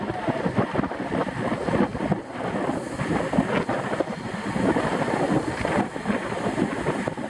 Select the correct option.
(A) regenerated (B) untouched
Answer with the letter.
B